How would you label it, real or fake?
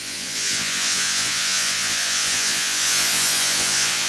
fake